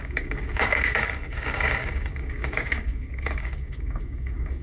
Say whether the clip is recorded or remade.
remade